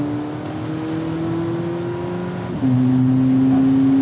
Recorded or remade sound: recorded